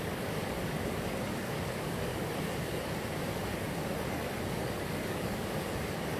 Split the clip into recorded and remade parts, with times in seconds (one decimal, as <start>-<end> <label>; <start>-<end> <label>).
0.0-6.2 remade